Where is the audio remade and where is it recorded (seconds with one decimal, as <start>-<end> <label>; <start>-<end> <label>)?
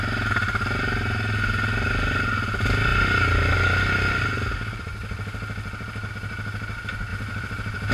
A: 0.0-7.1 recorded; 7.1-7.9 remade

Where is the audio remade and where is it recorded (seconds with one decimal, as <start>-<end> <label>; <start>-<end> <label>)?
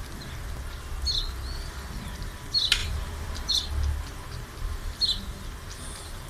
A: 0.0-2.8 recorded; 2.8-3.5 remade; 3.5-6.3 recorded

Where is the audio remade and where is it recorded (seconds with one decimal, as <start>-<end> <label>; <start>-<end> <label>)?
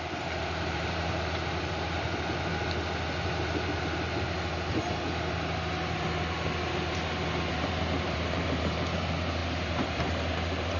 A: 0.0-2.5 remade; 2.5-7.5 recorded; 7.5-10.8 remade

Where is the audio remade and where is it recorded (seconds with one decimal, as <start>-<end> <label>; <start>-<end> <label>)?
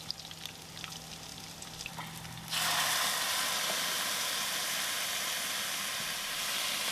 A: 0.0-6.9 recorded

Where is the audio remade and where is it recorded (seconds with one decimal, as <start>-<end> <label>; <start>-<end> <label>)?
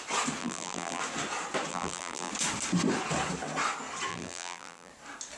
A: 0.0-0.4 recorded; 0.4-1.0 remade; 1.0-1.7 recorded; 1.7-2.3 remade; 2.3-4.1 recorded; 4.1-4.9 remade; 4.9-5.4 recorded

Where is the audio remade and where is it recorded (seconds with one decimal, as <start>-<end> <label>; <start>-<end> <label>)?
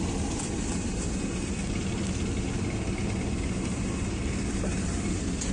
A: 0.0-3.0 recorded; 3.0-5.5 remade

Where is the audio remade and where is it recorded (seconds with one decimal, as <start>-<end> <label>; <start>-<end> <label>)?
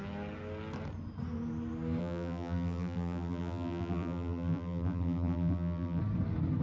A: 0.0-2.0 recorded; 2.0-6.0 remade; 6.0-6.6 recorded